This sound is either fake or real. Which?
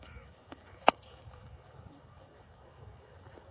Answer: fake